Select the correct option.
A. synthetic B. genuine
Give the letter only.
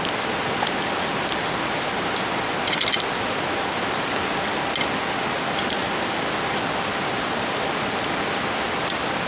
B